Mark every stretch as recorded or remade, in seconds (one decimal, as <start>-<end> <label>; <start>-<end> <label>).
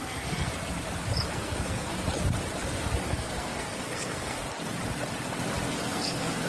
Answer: 0.0-0.5 remade; 0.5-1.3 recorded; 1.3-1.9 remade; 1.9-3.1 recorded; 3.1-4.4 remade; 4.4-5.7 recorded; 5.7-6.5 remade